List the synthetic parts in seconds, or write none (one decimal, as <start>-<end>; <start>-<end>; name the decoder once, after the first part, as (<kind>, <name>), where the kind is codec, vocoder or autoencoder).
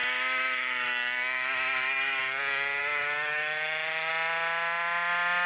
0.0-2.2 (autoencoder, DAC-VAE); 2.8-4.1